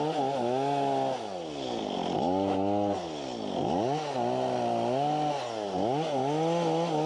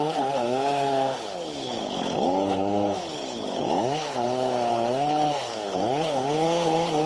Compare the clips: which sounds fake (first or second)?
second